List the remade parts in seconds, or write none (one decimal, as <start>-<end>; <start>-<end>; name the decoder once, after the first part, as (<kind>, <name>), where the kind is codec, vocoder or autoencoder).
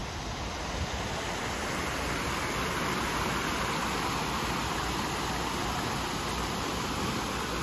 none